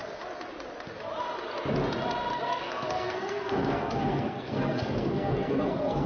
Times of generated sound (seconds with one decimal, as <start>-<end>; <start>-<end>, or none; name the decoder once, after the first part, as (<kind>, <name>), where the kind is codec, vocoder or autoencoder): 2.3-6.1 (codec, SNAC)